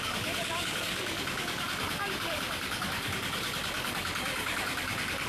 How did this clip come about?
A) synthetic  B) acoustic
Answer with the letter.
A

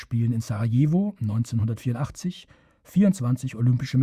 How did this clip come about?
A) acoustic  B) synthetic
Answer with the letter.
B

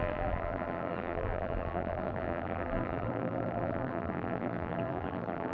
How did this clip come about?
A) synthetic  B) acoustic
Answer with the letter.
A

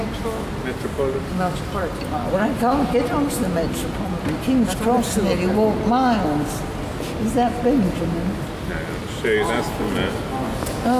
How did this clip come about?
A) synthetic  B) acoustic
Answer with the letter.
B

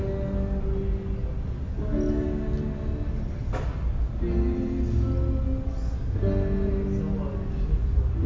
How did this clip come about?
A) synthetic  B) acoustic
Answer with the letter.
B